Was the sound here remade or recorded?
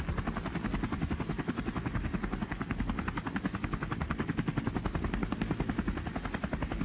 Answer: recorded